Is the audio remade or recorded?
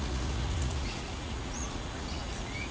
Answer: remade